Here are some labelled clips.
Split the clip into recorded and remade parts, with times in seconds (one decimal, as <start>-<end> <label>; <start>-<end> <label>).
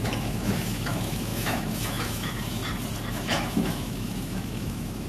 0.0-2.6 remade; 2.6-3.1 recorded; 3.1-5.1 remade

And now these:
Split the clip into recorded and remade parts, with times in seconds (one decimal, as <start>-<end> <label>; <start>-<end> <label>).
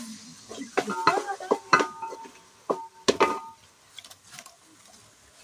0.0-5.4 recorded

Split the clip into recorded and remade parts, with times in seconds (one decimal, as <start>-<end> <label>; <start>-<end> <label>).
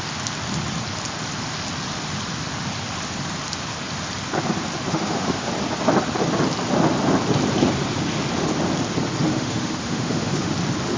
0.0-4.9 recorded; 4.9-5.5 remade; 5.5-9.3 recorded; 9.3-10.5 remade; 10.5-11.0 recorded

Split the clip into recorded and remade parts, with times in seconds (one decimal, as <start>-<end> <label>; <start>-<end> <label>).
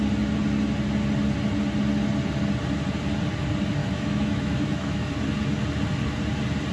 0.0-3.8 recorded; 3.8-5.1 remade; 5.1-6.7 recorded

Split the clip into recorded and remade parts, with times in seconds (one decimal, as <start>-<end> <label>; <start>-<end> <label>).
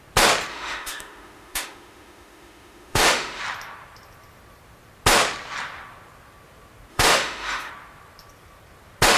0.0-0.5 recorded; 0.5-3.4 remade; 3.4-6.9 recorded; 6.9-7.7 remade; 7.7-9.2 recorded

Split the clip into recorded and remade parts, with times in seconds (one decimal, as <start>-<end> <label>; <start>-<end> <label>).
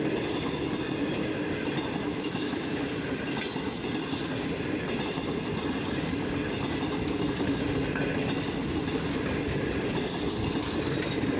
0.0-2.1 recorded; 2.1-2.8 remade; 2.8-11.4 recorded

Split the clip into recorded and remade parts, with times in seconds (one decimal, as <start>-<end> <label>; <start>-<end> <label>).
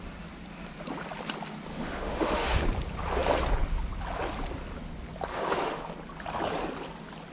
0.0-1.7 recorded; 1.7-2.6 remade; 2.6-5.3 recorded; 5.3-5.8 remade; 5.8-7.3 recorded